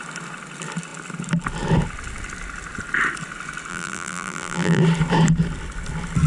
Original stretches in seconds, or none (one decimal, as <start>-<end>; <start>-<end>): 0.0-3.7; 4.8-6.3